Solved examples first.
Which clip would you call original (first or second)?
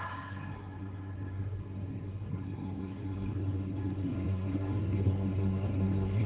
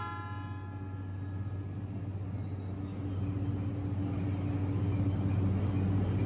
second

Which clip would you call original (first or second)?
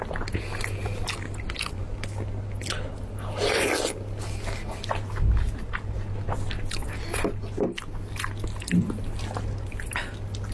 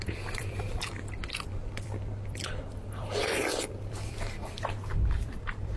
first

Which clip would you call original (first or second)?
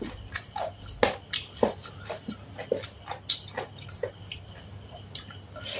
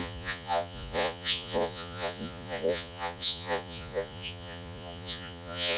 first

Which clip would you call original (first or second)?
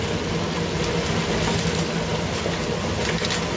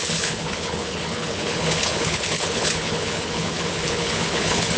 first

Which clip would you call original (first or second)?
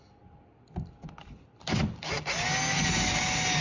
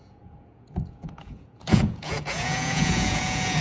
first